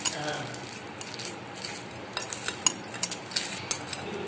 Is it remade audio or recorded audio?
recorded